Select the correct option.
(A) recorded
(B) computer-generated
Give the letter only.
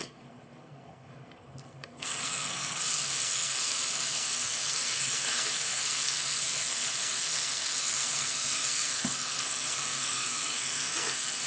B